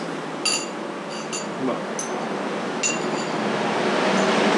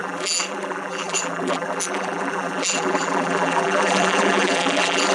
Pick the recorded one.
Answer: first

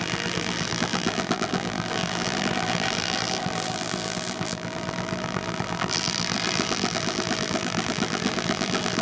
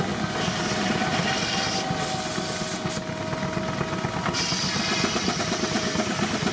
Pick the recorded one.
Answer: second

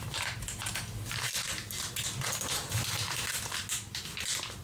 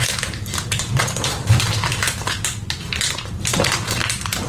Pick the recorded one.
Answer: first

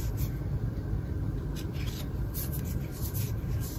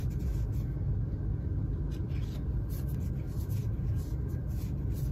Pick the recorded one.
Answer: second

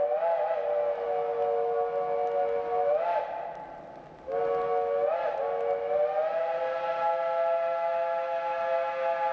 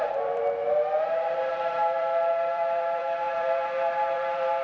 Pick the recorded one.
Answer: first